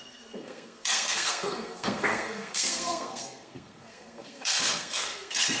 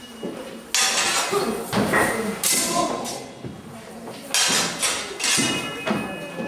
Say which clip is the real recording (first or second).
second